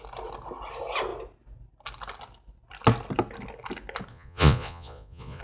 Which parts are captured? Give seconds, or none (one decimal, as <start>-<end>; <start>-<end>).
0.0-4.1